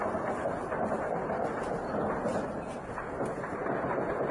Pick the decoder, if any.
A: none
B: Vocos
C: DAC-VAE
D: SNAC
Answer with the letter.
A